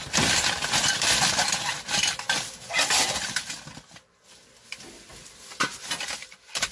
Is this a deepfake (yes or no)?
no